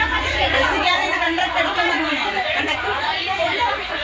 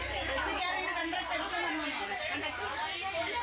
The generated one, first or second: first